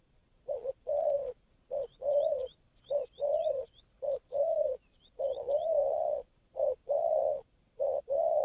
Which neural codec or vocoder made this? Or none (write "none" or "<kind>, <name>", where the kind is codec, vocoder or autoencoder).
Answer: vocoder, Vocos